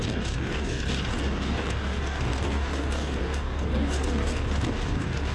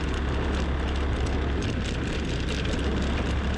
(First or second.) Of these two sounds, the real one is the second